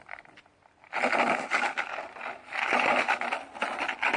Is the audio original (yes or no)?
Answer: yes